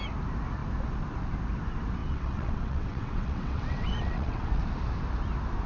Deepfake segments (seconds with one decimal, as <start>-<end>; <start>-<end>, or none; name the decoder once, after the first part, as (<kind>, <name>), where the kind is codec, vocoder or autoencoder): 2.0-4.6 (vocoder, WaveNeXt)